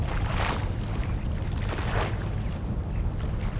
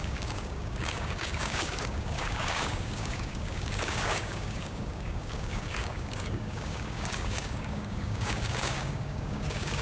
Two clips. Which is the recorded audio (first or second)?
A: first